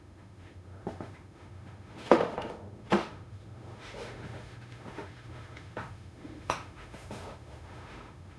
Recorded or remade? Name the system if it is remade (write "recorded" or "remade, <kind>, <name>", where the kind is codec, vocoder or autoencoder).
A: remade, autoencoder, DAC-VAE